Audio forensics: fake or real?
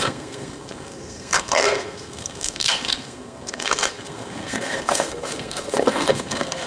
fake